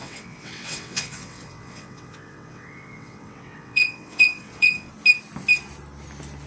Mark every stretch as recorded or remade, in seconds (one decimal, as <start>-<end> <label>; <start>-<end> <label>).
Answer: 0.0-4.9 remade; 4.9-6.5 recorded